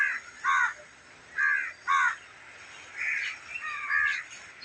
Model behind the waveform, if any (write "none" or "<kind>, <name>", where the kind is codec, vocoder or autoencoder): none